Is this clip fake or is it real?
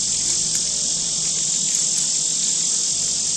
real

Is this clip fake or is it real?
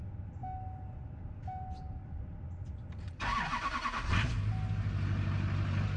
real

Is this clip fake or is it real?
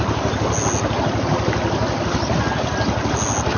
real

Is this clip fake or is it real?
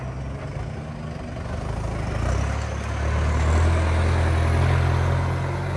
real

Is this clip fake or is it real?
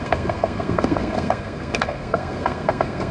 fake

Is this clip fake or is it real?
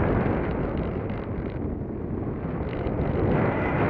real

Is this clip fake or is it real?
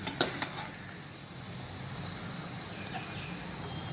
real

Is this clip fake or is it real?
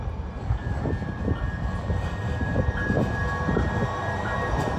real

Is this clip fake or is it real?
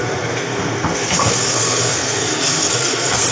fake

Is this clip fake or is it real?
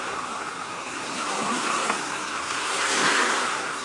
fake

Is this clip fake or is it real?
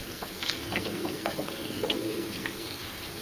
fake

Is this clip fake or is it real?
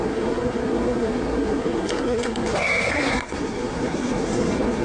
fake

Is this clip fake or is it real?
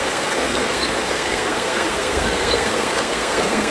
fake